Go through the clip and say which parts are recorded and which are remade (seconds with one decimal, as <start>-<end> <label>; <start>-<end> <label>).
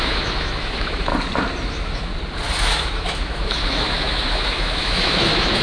0.0-1.1 remade; 1.1-1.7 recorded; 1.7-2.1 remade; 2.1-2.6 recorded; 2.6-5.6 remade